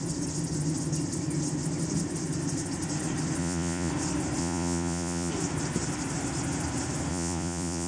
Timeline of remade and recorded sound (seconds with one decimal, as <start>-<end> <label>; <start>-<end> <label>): 0.0-3.4 recorded; 3.4-3.9 remade; 3.9-4.4 recorded; 4.4-5.3 remade; 5.3-7.1 recorded; 7.1-7.9 remade